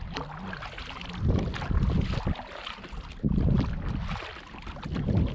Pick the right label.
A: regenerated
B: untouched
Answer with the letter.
B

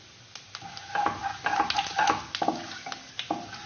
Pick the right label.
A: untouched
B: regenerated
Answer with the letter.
A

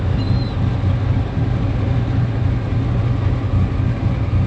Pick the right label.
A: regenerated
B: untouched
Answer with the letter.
B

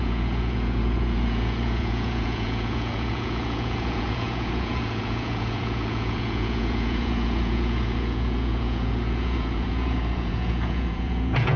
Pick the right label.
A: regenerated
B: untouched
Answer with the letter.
A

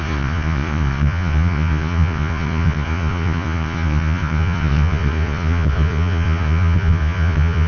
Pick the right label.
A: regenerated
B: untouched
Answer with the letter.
A